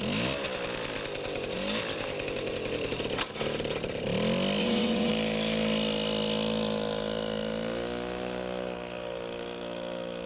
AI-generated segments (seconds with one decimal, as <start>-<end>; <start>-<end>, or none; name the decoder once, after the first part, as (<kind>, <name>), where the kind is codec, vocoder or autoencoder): 4.6-5.1 (vocoder, WaveNeXt)